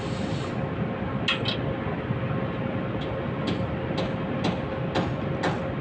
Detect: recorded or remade recorded